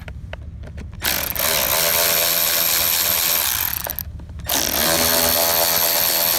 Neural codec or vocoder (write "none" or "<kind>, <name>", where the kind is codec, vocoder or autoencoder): none